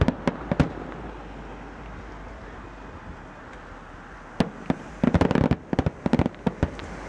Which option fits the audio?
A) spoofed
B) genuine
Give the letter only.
B